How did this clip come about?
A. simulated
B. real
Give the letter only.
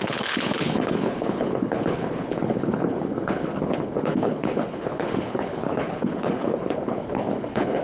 A